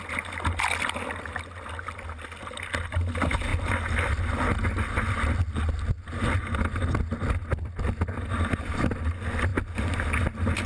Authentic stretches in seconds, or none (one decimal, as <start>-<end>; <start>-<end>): 0.0-10.7